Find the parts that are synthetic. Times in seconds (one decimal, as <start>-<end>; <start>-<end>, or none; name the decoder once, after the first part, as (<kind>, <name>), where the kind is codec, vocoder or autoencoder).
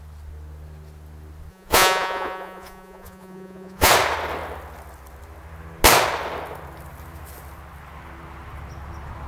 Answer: 1.5-3.9 (vocoder, Vocos)